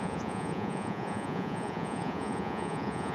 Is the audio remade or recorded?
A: remade